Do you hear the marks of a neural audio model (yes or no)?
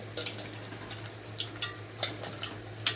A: no